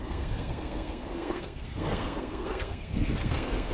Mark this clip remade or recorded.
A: remade